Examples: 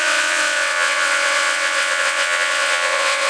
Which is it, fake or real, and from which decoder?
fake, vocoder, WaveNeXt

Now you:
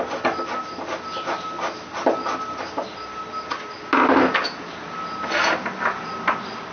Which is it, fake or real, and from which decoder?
real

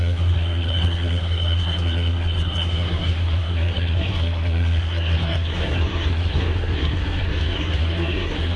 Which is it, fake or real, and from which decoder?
fake, codec, SNAC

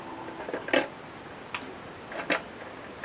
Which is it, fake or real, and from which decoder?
real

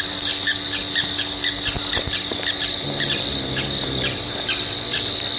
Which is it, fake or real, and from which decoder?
real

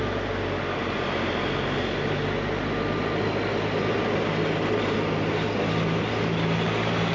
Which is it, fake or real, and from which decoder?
real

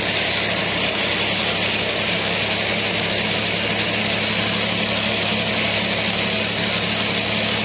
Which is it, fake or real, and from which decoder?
real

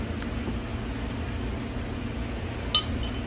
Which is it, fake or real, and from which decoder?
real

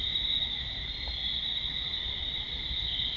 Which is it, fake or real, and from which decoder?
real